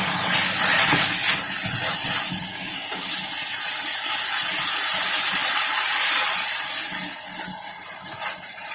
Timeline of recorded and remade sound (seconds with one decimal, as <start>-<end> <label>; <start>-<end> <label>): 0.0-2.5 recorded; 2.5-3.1 remade; 3.1-8.7 recorded